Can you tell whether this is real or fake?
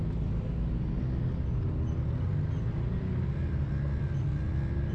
real